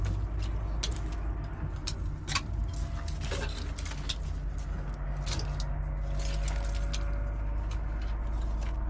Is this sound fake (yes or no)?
no